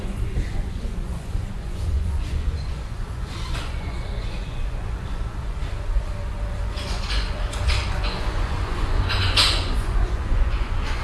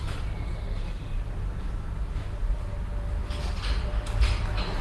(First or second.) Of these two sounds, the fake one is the first